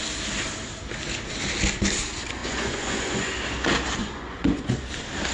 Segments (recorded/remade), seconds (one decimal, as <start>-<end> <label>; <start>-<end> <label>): 0.0-2.4 recorded; 2.4-3.3 remade; 3.3-4.0 recorded; 4.0-4.8 remade; 4.8-5.3 recorded